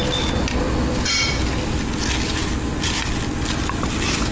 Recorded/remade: recorded